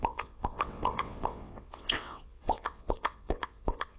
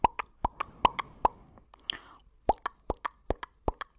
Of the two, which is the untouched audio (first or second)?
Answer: second